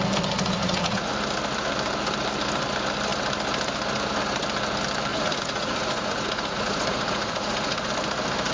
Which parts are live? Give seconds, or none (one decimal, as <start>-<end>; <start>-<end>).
0.0-0.6; 1.1-5.1; 7.9-8.5